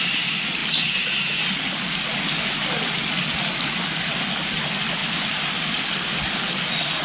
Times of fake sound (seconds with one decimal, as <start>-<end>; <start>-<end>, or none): none